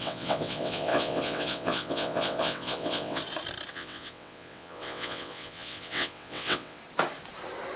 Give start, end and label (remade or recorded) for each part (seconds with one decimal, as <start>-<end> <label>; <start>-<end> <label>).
0.0-3.2 remade; 3.2-3.7 recorded; 3.7-6.8 remade; 6.8-7.8 recorded